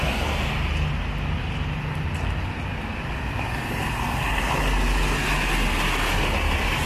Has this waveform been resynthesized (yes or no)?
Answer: no